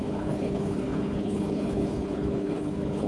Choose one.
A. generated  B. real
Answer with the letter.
A